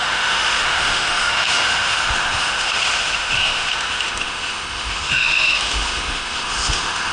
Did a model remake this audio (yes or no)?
yes